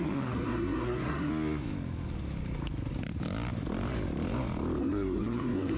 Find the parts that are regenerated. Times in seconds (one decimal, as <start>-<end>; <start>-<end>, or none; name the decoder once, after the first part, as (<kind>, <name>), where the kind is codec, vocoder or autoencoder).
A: 0.0-1.3 (codec, SNAC); 4.8-5.8